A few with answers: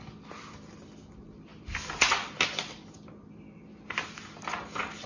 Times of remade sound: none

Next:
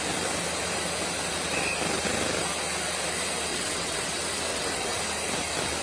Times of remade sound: 3.5-4.1 (vocoder, WaveNeXt); 4.5-5.0

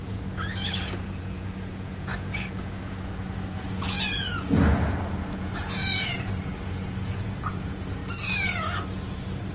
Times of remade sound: 0.0-8.0 (vocoder, Vocos)

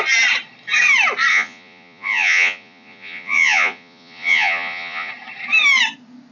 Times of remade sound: 1.3-5.1 (vocoder, Vocos)

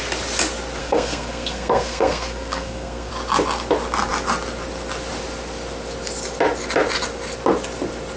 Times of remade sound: 0.8-3.1 (codec, SNAC)

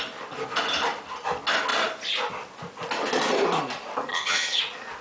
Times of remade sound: 4.1-4.6 (vocoder, HiFi-GAN)

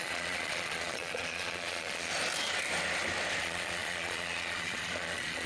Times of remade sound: 0.0-2.1 (vocoder, Vocos); 3.4-5.5